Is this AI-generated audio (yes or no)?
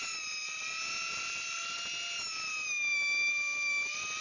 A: no